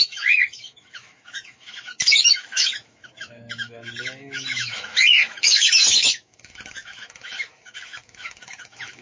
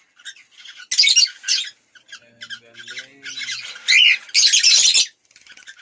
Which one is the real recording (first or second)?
second